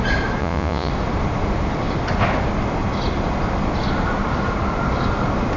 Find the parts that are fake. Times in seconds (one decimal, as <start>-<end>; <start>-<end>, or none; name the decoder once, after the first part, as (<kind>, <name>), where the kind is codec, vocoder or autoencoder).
0.4-0.9 (vocoder, Vocos)